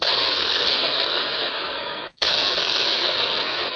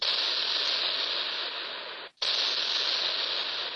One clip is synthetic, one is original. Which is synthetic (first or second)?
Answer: first